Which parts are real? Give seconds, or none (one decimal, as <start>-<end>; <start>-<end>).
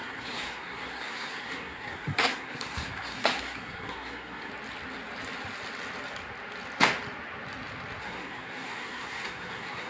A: 4.5-8.0